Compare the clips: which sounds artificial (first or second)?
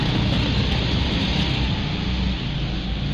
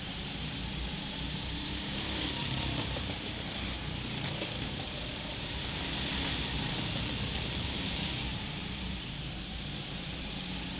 second